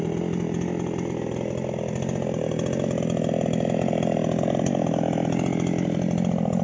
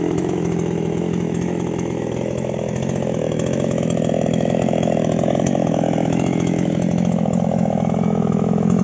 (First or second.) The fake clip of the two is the second